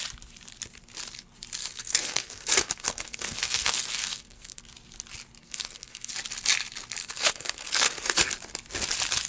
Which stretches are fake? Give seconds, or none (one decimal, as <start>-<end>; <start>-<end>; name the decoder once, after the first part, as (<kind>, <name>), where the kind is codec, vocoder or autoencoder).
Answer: 1.6-4.6 (codec, SNAC); 5.4-6.1; 7.0-8.3